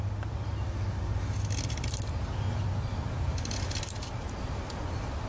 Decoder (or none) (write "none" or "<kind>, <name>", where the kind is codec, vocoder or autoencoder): none